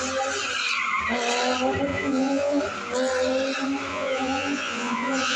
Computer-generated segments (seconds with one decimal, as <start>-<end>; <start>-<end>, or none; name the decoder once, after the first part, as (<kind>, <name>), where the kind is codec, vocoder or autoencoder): 1.9-2.6 (vocoder, Vocos); 3.9-5.4